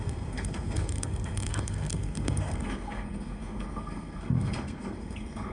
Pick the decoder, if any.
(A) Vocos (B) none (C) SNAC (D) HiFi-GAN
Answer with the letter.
C